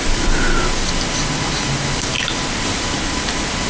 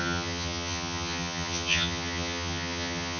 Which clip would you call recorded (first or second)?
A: first